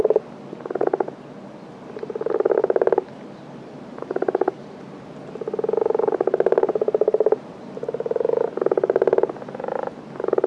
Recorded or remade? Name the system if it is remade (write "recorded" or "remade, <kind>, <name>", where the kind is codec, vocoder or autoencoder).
recorded